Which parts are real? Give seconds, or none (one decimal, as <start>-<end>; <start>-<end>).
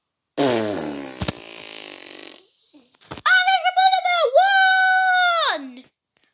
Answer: 0.0-2.2; 4.3-6.3